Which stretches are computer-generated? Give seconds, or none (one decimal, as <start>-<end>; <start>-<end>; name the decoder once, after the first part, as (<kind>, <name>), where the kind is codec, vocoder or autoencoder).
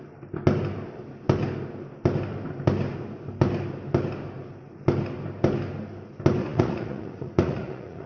6.4-8.1 (vocoder, Vocos)